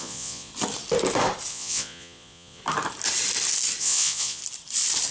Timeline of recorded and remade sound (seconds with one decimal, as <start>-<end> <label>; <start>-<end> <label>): 0.0-0.5 remade; 0.5-1.5 recorded; 1.5-2.6 remade; 2.6-3.8 recorded; 3.8-4.4 remade; 4.4-5.1 recorded